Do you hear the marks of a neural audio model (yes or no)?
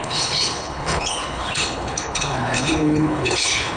yes